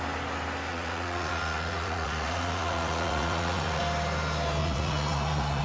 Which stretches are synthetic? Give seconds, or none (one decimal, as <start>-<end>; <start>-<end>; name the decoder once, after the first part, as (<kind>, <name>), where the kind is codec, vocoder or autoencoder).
0.7-3.8 (vocoder, Vocos); 4.6-5.6